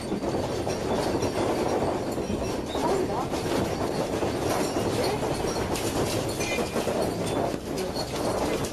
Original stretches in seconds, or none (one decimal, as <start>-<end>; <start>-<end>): 0.0-8.7